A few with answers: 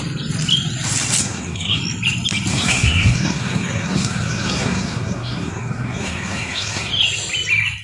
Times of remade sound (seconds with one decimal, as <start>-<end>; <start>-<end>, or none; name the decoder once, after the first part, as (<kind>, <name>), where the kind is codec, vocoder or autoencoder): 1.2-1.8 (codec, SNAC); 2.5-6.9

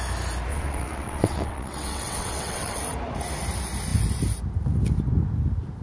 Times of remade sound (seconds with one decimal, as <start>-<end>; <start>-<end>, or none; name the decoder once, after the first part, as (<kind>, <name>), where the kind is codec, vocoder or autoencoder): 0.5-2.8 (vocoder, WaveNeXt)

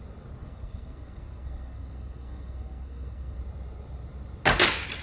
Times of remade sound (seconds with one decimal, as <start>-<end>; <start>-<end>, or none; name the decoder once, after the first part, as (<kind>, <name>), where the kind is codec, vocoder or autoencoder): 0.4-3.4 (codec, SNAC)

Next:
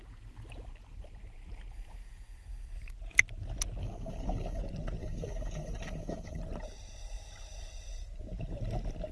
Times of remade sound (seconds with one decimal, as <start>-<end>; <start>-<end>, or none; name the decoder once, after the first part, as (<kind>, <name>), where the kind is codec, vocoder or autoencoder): 3.8-4.6 (codec, DAC); 5.0-6.4